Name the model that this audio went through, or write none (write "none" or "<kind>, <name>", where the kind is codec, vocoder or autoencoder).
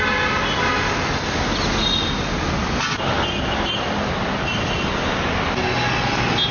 none